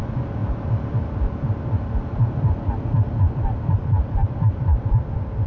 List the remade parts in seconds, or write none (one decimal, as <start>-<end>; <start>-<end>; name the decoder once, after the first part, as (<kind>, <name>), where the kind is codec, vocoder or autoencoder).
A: none